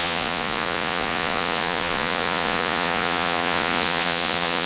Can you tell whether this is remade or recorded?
remade